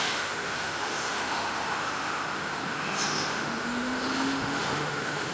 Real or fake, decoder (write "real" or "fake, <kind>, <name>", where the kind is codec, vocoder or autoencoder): fake, autoencoder, DAC-VAE